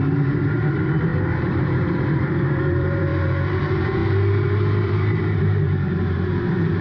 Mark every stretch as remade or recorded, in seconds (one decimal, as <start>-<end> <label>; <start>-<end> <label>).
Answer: 0.0-6.8 remade